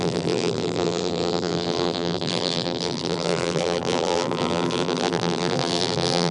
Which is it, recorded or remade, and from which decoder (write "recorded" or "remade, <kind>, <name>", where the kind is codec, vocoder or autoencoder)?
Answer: remade, vocoder, BigVGAN v2